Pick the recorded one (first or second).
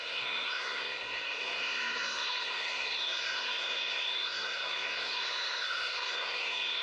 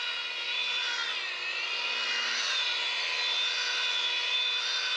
second